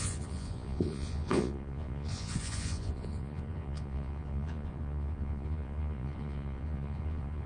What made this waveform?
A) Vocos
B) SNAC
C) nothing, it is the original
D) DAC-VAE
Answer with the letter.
A